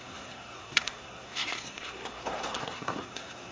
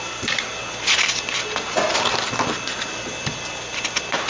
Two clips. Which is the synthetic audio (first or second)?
first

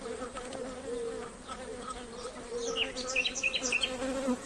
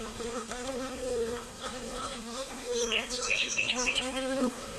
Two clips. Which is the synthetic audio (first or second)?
second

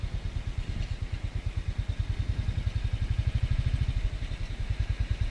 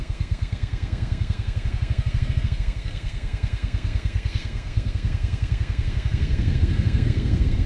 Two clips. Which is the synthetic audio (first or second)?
second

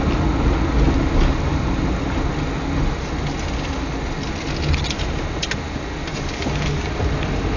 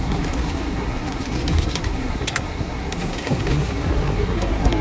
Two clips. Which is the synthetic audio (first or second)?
second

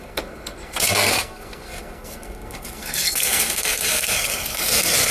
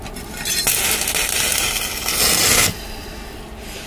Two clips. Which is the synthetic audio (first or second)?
first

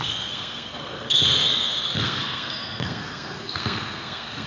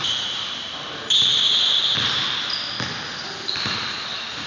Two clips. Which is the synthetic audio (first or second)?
first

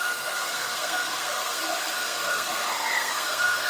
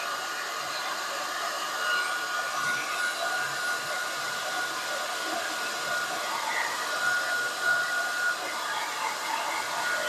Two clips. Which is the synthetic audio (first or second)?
first